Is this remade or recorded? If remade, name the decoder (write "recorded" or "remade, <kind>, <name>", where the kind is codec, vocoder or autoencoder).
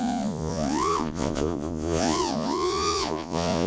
remade, vocoder, Vocos